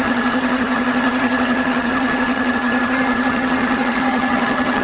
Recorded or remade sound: remade